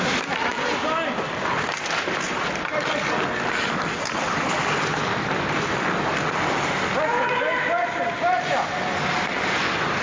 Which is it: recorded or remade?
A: recorded